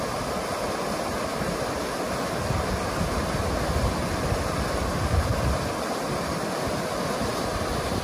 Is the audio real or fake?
real